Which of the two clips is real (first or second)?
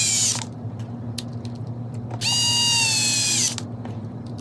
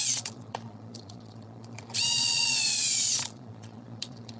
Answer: first